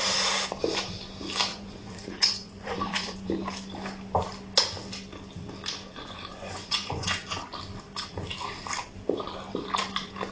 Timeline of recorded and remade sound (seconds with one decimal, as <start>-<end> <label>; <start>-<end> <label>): 0.0-1.5 recorded; 1.5-3.3 remade; 3.3-5.9 recorded; 5.9-7.4 remade; 7.4-10.3 recorded